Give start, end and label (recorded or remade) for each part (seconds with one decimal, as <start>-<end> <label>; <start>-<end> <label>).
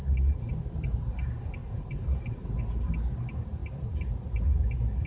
0.0-1.6 recorded; 1.6-2.6 remade; 2.6-5.1 recorded